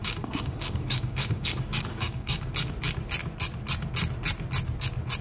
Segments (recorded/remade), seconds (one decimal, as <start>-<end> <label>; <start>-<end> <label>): 0.0-2.5 remade; 2.5-5.2 recorded